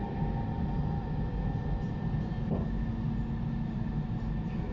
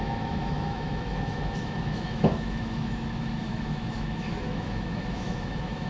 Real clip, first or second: first